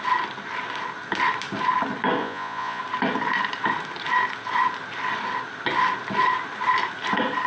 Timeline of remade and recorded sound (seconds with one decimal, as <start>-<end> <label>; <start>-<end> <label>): 0.0-2.2 recorded; 2.2-2.8 remade; 2.8-7.5 recorded